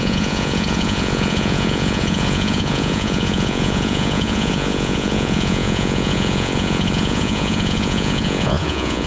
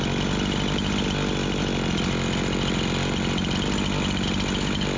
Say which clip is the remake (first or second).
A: first